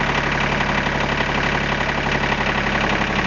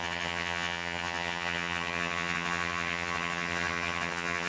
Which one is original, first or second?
first